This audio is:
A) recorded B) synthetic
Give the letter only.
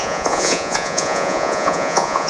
B